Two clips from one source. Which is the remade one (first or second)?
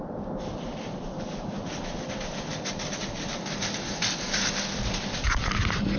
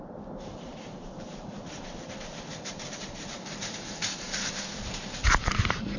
second